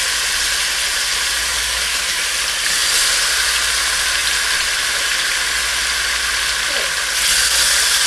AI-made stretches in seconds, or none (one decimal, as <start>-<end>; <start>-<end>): 1.5-2.2